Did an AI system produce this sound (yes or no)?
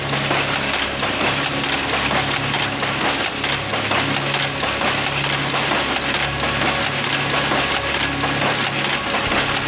no